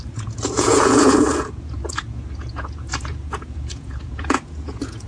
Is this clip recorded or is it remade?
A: remade